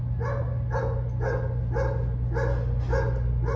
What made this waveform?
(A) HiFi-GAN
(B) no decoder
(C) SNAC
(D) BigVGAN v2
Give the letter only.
B